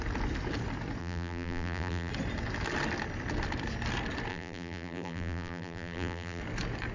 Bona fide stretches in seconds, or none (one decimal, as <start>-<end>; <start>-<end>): 0.0-1.0; 2.1-4.3; 6.4-6.9